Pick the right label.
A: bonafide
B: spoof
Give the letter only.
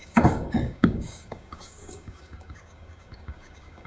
B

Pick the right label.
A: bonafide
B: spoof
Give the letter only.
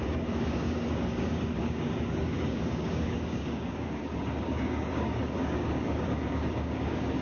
B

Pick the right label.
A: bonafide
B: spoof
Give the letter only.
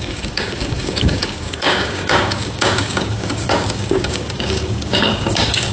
B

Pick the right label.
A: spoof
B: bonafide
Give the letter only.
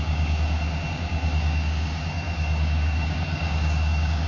A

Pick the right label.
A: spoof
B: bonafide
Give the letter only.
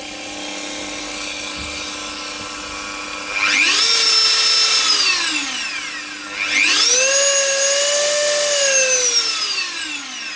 B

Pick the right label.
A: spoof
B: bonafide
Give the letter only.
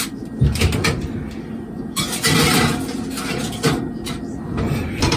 B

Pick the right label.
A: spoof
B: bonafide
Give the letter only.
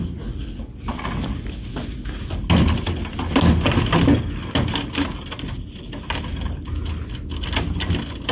B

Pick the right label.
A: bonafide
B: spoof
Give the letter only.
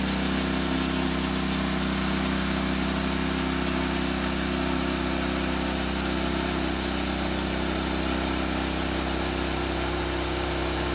A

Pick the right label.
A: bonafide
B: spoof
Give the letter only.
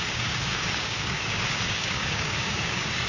B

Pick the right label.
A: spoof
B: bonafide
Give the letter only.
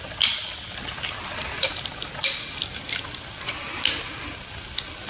B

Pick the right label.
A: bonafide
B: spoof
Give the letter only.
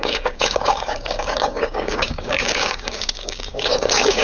B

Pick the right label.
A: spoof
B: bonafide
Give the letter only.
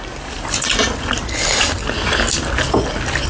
B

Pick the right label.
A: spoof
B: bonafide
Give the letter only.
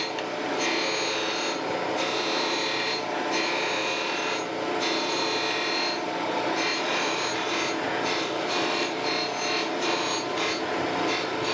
B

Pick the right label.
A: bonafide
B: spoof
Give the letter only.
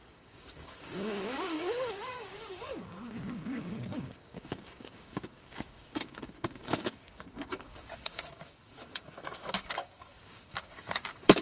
B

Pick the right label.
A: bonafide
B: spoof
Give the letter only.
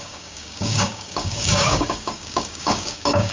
B